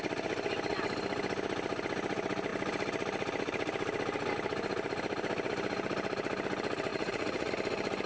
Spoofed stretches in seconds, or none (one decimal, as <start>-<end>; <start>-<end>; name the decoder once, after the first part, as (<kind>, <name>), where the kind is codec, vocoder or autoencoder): 6.9-7.5 (vocoder, Vocos)